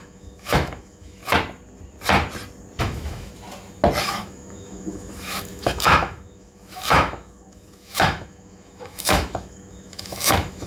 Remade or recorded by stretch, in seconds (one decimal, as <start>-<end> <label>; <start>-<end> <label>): 0.0-1.2 remade; 1.2-2.8 recorded; 2.8-3.3 remade; 3.3-4.0 recorded; 4.0-10.7 remade